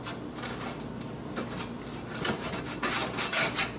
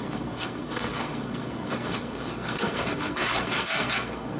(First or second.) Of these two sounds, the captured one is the first